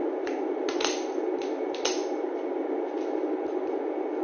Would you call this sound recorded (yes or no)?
yes